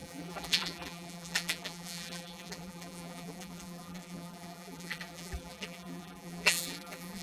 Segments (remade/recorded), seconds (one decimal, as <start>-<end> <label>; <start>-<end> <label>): 0.0-7.2 remade